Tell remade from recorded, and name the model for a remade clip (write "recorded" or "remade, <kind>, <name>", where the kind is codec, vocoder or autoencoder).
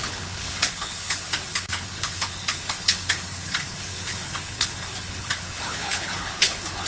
remade, codec, HILCodec